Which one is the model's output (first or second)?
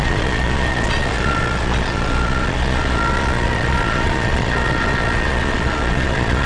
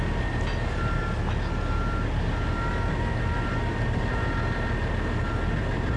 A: first